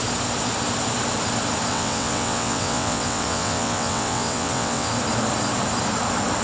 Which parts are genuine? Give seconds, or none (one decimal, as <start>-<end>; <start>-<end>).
0.0-1.7; 4.9-6.4